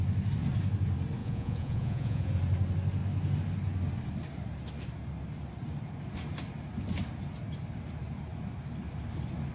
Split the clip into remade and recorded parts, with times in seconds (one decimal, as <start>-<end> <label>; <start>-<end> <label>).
0.0-1.2 recorded; 1.2-2.3 remade; 2.3-9.5 recorded